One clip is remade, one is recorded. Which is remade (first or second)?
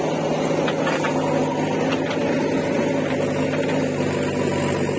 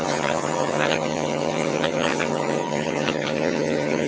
second